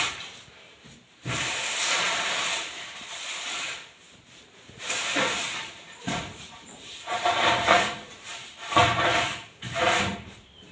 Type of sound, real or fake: fake